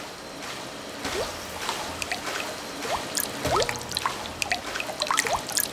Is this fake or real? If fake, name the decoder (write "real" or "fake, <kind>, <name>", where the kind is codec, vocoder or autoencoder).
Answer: real